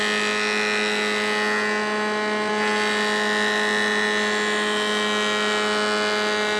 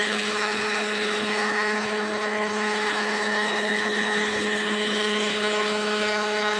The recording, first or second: first